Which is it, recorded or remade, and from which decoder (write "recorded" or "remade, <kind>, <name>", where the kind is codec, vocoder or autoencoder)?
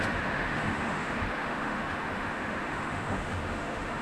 remade, autoencoder, DAC-VAE